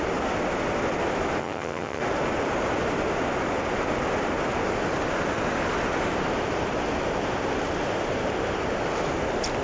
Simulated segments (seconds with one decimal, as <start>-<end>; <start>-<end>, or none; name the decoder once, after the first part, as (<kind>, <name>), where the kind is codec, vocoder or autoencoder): 1.4-2.0 (vocoder, HiFi-GAN)